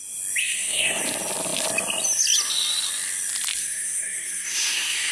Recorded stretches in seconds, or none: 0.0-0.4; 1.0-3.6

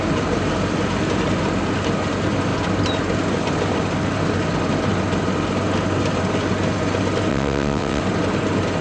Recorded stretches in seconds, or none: 0.0-7.3; 8.0-8.8

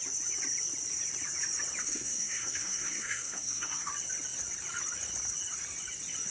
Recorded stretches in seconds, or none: 0.0-1.8; 3.9-6.3

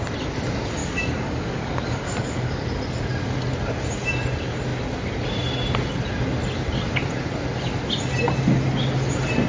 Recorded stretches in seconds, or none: 0.0-0.8; 2.6-9.5

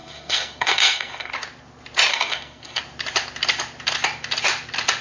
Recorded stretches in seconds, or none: 1.3-2.1; 2.8-5.0

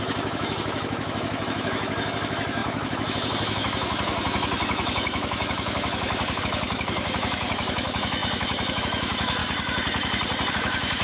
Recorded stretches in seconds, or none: 9.4-10.5

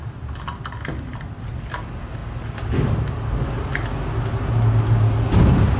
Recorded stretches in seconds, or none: 0.0-5.8

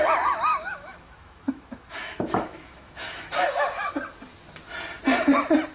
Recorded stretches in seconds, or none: 0.0-0.5; 3.9-5.7